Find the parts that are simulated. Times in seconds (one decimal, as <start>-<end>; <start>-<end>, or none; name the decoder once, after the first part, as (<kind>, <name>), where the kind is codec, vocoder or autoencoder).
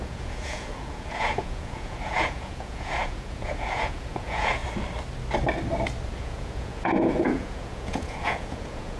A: 0.0-4.6 (vocoder, Vocos); 6.2-9.0